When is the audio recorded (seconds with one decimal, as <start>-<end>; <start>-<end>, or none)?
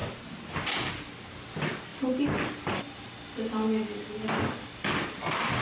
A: 0.0-5.6